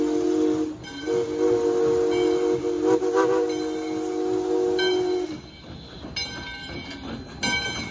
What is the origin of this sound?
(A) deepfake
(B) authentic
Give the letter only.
B